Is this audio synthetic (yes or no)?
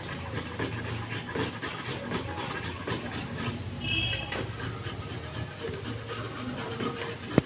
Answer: no